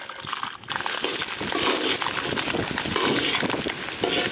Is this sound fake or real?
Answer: real